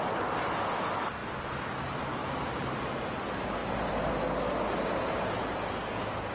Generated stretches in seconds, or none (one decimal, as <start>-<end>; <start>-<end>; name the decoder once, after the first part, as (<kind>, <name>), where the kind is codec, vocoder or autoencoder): 1.2-1.7 (vocoder, BigVGAN v2); 2.2-3.2